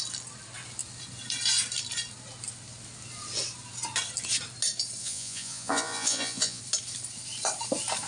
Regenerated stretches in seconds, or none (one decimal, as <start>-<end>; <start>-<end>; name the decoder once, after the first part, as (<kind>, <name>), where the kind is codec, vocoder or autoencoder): 5.0-6.6 (vocoder, Vocos)